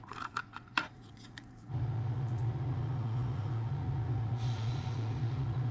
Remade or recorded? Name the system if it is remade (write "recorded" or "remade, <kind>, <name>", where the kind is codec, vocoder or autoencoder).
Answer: remade, vocoder, Vocos